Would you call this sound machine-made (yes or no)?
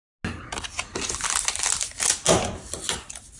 no